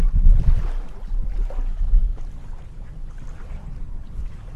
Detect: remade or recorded recorded